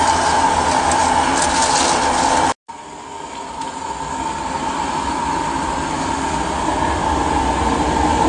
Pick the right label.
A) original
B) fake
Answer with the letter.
A